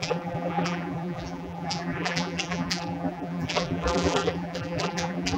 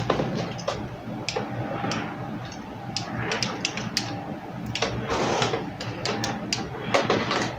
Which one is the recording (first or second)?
second